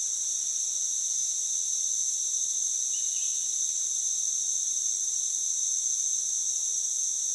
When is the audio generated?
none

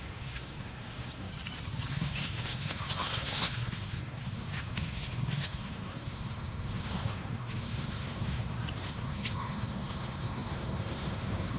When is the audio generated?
0.0-1.3; 1.9-11.6

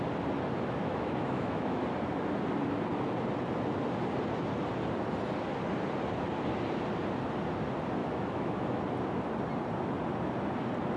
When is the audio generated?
0.8-1.8; 8.0-8.8

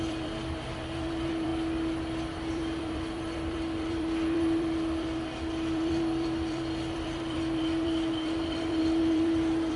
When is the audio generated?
0.0-1.5; 2.5-9.8

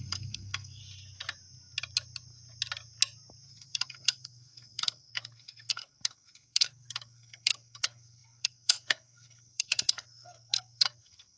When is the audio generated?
0.0-0.8; 3.5-11.4